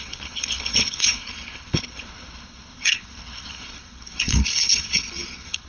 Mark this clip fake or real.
fake